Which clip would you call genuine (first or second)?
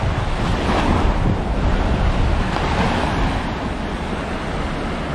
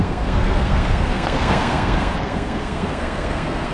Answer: first